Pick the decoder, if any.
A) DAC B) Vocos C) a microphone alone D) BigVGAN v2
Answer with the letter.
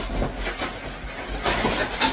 C